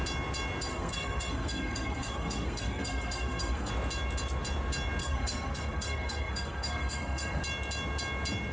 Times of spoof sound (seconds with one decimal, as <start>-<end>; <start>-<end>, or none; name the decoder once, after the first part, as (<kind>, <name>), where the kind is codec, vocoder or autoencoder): 0.7-3.7 (codec, SNAC); 5.0-7.4